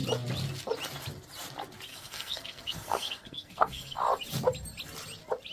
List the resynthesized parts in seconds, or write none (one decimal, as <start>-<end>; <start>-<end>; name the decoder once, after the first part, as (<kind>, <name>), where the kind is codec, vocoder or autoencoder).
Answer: 1.9-4.0 (codec, SNAC)